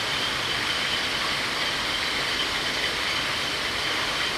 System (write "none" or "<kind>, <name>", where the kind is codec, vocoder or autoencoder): none